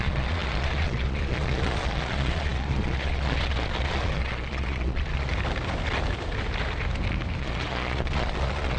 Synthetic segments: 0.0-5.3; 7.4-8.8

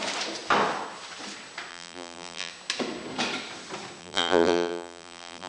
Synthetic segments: 1.7-2.5; 4.0-5.5

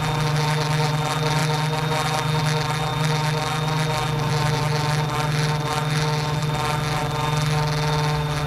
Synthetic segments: none

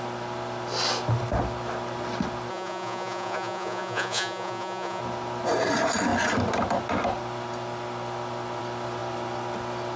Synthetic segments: 2.5-5.0

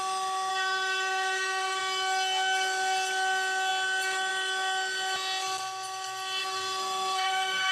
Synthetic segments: 0.5-1.8; 6.4-7.7

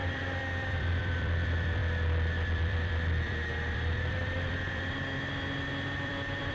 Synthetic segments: 0.0-6.5

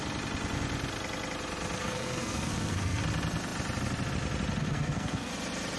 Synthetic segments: 1.8-3.0; 4.6-5.3

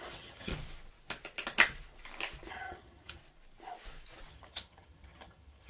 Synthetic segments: 0.0-0.5; 2.5-3.2; 4.3-5.7